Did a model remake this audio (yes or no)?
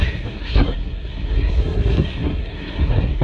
yes